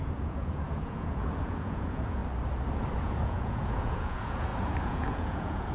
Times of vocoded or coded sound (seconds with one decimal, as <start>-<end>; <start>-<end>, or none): 0.0-2.2; 3.0-5.7

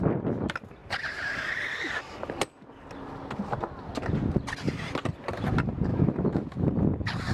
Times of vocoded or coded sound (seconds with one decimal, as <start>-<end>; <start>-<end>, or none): 5.9-6.7

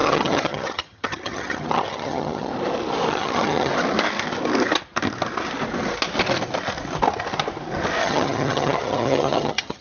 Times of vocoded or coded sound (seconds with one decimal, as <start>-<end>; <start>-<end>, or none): 0.0-2.5; 3.1-3.7; 8.0-9.8

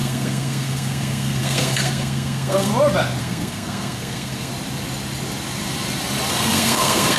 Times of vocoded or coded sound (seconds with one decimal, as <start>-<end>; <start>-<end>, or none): 0.0-2.7; 3.2-4.5; 6.3-7.2

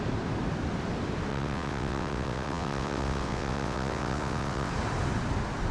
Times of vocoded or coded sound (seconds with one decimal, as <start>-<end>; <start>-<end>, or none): 1.3-4.7